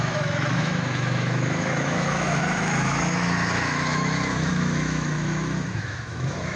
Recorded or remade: remade